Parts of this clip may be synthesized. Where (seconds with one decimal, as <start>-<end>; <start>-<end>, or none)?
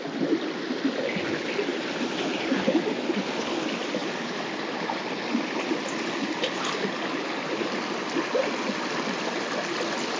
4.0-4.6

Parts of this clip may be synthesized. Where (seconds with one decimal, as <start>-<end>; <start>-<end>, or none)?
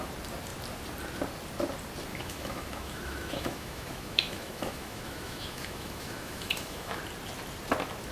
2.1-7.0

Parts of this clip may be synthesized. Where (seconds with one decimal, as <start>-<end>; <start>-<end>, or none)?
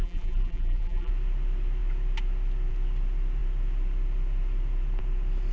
0.0-1.1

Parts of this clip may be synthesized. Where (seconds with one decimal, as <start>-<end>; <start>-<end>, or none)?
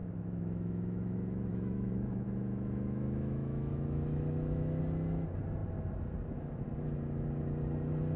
0.0-4.8